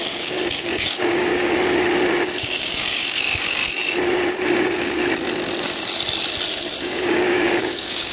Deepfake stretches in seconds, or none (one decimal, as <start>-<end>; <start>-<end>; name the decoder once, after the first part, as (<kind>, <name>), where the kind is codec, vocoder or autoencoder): 0.0-1.3 (codec, DAC); 2.4-3.6; 4.5-5.0; 6.8-8.1